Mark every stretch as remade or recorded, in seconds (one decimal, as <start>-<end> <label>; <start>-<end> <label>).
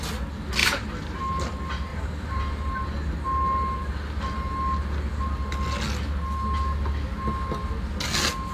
0.0-0.6 recorded; 0.6-1.2 remade; 1.2-1.9 recorded; 1.9-2.4 remade; 2.4-8.5 recorded